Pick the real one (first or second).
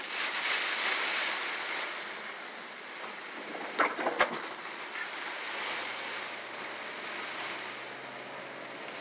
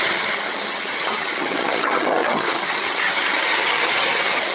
first